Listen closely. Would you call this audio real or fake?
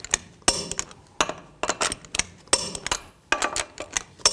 real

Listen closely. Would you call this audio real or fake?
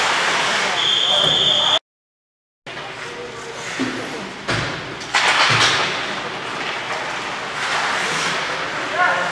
real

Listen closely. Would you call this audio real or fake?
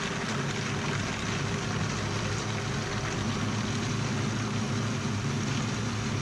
real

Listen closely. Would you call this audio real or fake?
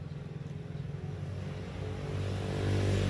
real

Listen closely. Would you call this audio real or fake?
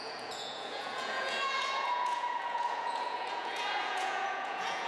fake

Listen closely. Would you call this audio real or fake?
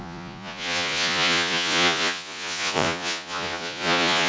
fake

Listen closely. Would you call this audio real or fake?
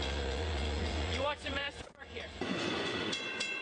fake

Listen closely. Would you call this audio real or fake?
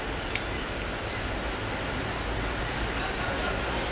real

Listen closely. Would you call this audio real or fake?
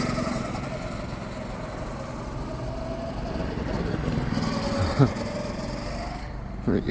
real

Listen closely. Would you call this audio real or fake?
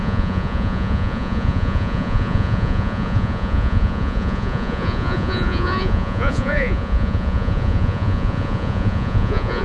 fake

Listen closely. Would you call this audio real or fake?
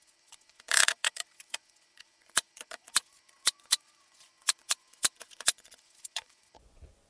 fake